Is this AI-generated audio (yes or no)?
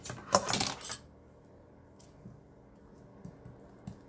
no